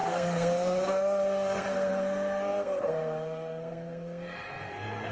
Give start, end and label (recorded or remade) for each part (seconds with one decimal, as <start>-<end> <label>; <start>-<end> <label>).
0.0-5.1 remade